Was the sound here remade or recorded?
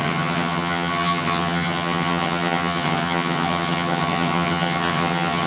remade